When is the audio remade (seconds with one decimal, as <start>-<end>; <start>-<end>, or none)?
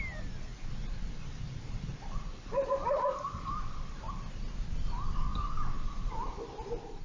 0.5-4.4